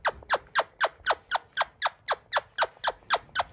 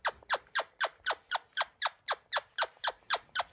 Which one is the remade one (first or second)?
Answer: second